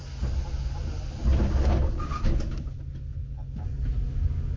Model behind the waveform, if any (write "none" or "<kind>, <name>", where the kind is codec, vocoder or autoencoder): none